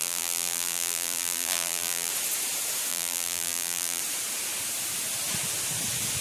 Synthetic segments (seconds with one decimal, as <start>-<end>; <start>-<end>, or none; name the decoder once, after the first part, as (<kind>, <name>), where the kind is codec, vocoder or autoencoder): 0.0-2.1 (vocoder, BigVGAN v2); 2.9-4.0